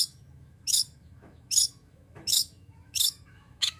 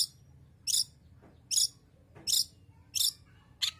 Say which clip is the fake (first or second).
first